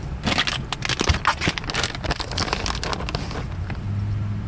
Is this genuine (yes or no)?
yes